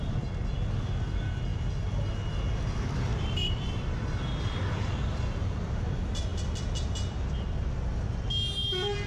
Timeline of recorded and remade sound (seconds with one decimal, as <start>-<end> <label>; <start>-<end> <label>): 0.0-3.1 recorded; 3.1-5.8 remade; 5.8-6.3 recorded; 6.3-8.3 remade; 8.3-9.1 recorded